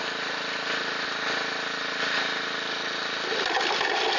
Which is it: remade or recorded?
recorded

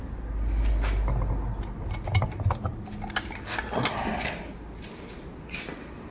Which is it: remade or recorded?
recorded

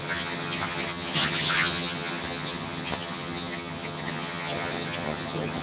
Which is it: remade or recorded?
remade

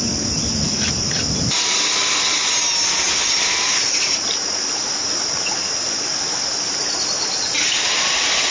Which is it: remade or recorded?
recorded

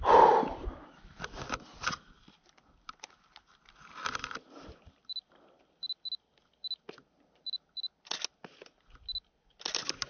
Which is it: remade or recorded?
recorded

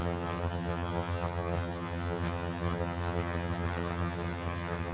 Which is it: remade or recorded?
remade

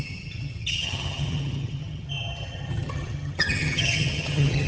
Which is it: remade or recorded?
remade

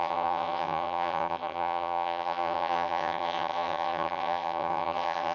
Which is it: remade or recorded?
remade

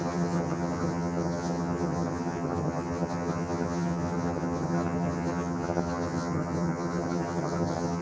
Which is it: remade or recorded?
remade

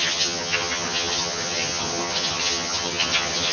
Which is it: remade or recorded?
remade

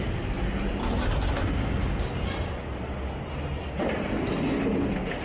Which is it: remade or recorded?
recorded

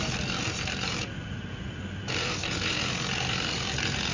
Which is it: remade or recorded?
recorded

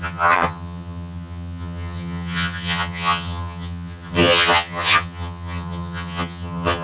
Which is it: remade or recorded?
remade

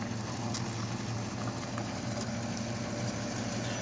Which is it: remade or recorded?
recorded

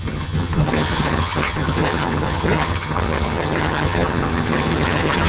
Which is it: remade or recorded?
remade